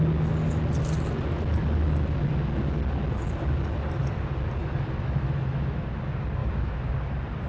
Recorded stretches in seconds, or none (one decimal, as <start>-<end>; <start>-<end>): 0.0-4.6; 5.8-6.4; 6.9-7.5